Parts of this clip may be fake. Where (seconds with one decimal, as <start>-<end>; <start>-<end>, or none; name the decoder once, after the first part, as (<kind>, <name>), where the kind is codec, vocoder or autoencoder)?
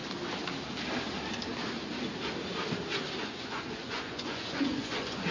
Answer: 3.2-5.3 (vocoder, Vocos)